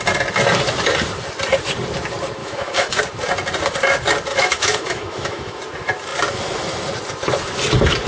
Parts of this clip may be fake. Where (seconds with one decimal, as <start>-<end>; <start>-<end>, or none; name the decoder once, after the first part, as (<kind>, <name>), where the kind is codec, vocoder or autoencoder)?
2.4-3.0 (autoencoder, DAC-VAE); 4.3-5.6